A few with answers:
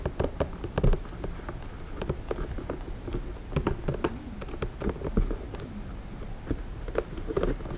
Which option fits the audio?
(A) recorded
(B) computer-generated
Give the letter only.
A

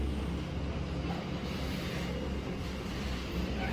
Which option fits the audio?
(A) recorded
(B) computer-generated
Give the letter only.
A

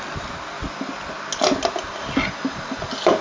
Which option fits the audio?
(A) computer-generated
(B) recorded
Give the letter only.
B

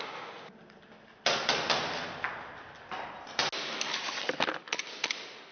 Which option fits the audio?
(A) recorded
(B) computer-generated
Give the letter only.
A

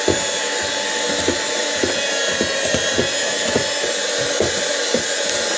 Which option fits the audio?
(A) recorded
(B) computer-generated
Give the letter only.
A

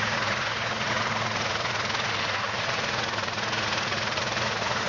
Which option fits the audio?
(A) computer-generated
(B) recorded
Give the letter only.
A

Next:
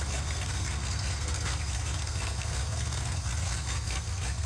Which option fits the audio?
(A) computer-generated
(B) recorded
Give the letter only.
A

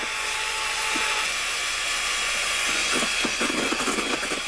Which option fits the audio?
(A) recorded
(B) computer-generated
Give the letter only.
B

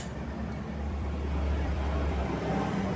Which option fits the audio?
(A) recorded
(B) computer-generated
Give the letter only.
B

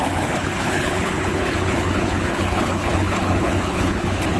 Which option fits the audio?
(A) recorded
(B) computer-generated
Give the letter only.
B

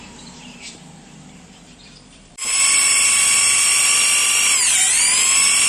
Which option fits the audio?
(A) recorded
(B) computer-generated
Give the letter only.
B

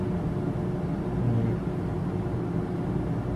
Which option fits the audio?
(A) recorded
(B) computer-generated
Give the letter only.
A